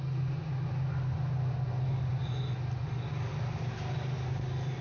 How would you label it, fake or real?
real